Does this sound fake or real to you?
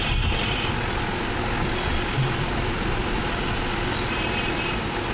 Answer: real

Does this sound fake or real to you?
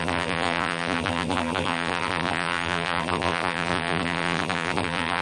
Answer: fake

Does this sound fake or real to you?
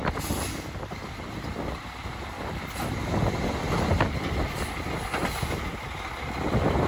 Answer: real